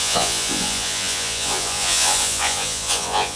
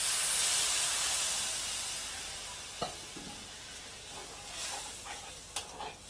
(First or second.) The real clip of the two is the second